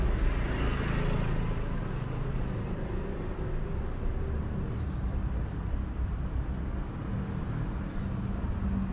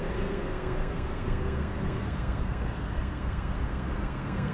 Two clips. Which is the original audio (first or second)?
first